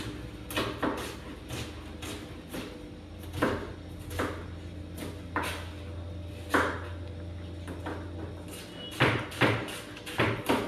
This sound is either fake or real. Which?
real